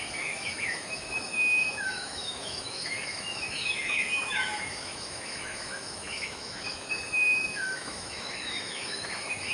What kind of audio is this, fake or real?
fake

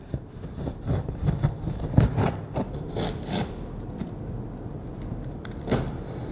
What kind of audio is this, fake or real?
real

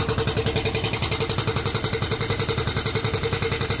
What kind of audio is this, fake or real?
real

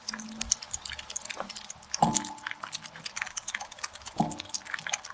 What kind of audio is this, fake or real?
real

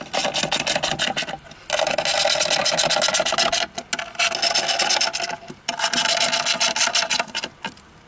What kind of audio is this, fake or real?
real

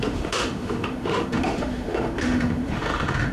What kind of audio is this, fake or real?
fake